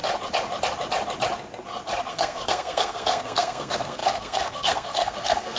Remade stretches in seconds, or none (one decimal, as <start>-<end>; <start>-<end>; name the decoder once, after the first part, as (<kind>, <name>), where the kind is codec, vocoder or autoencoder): 2.1-5.6 (codec, SNAC)